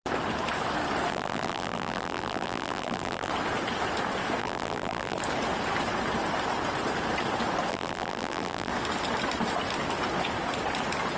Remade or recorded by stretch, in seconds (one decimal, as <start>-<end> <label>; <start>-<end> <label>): 0.0-1.1 recorded; 1.1-3.3 remade; 3.3-4.4 recorded; 4.4-5.2 remade; 5.2-7.7 recorded; 7.7-8.7 remade; 8.7-11.2 recorded

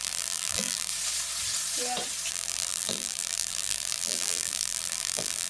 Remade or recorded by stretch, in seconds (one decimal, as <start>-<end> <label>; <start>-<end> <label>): 0.0-0.9 remade; 0.9-2.3 recorded; 2.3-5.5 remade